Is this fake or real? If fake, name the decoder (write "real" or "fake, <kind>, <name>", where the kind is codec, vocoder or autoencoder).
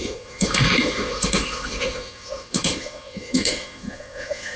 fake, autoencoder, DAC-VAE